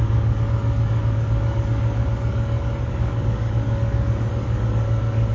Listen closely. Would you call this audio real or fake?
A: fake